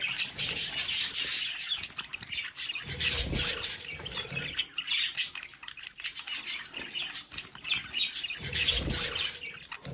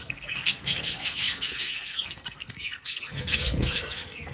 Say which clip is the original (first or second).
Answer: first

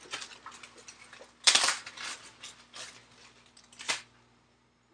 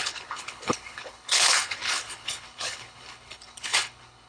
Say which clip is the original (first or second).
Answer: first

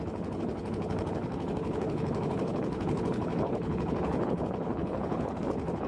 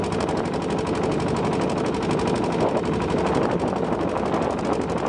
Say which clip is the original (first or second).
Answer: second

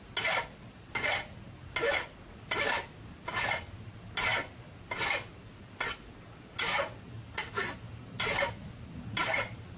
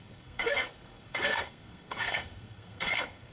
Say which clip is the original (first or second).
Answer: first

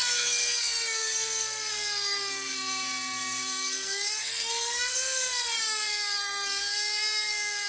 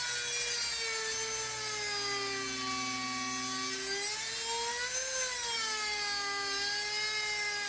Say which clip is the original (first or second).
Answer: second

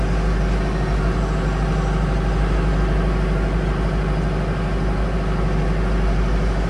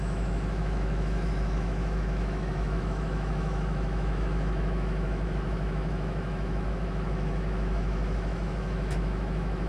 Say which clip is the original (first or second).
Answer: first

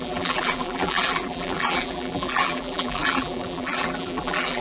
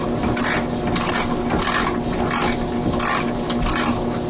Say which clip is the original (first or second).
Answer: second